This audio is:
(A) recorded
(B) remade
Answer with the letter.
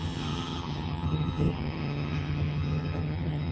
B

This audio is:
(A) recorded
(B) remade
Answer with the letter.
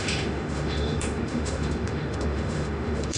B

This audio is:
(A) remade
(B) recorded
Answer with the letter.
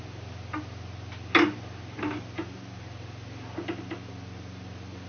B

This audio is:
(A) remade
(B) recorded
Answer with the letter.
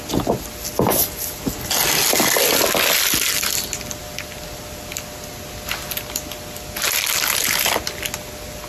B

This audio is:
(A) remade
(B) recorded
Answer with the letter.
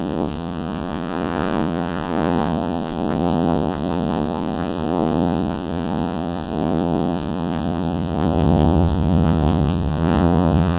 A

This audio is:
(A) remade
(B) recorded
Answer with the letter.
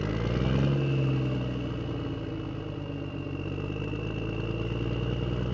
B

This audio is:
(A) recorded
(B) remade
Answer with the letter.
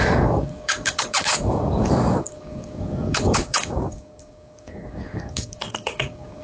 B